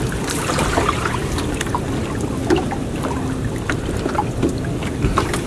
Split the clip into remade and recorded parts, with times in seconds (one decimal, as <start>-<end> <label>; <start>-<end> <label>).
0.0-5.5 recorded